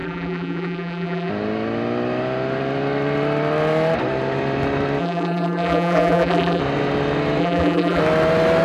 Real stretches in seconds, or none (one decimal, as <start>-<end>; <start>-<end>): 1.3-5.0; 6.6-7.4; 8.0-8.6